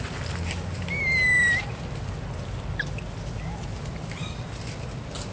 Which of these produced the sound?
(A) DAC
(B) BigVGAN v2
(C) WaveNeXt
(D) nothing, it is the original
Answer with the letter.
D